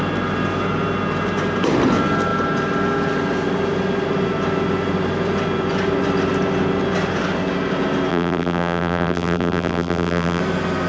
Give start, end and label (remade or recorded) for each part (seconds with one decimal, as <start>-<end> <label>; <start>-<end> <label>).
0.0-8.1 recorded; 8.1-10.4 remade; 10.4-10.9 recorded